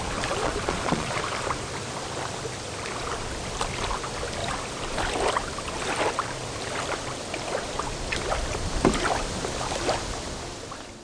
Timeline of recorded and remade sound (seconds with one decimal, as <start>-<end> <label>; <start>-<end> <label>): 0.0-0.4 recorded; 0.4-1.2 remade; 1.2-11.0 recorded